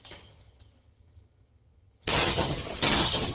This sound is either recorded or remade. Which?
remade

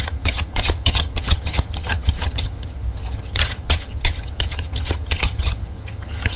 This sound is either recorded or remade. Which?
remade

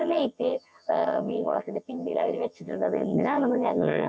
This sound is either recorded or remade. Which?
remade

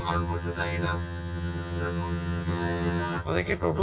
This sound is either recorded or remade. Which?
remade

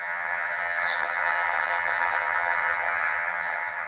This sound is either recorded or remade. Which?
remade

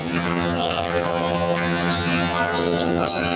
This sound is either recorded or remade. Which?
remade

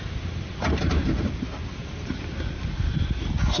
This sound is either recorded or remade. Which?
recorded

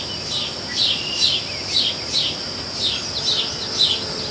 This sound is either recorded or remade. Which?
recorded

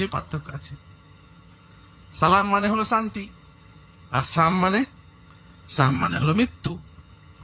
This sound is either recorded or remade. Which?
remade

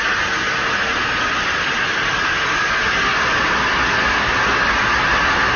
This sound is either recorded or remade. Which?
recorded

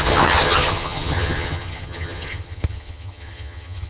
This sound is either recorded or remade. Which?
remade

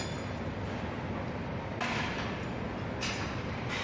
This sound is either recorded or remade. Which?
recorded